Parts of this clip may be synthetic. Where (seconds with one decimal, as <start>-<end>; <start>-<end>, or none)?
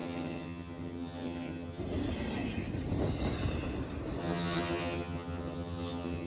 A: 0.0-1.8; 4.2-6.3